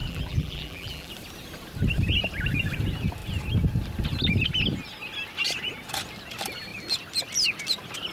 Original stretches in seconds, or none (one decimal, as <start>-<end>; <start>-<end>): 1.1-8.1